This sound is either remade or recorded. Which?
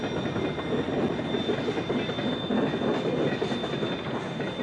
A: recorded